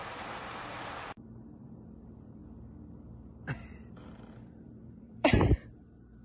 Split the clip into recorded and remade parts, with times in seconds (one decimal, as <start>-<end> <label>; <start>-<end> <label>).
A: 0.0-2.4 remade; 2.4-3.6 recorded; 3.6-6.2 remade